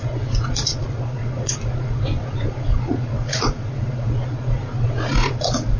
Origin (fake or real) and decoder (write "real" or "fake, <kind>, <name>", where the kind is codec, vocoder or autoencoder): fake, vocoder, Vocos